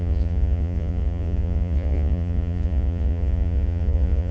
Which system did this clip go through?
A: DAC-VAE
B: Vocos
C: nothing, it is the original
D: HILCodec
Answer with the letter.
B